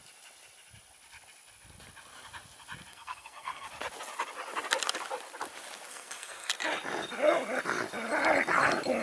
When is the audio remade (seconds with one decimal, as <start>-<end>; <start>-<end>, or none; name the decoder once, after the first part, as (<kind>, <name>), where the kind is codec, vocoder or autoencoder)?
2.9-3.7 (codec, SNAC); 5.9-6.5